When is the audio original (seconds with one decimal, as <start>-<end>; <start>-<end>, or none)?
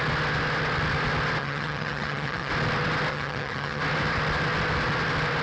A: 0.0-1.4; 2.5-3.1; 3.8-5.4